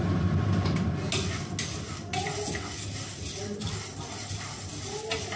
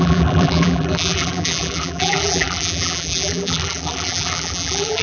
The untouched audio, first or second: first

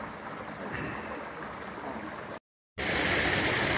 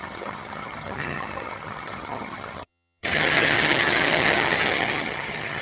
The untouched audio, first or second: first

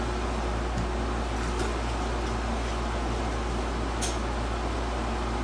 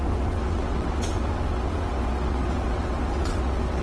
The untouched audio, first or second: first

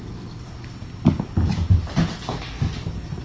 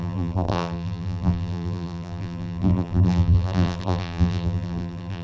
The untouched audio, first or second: first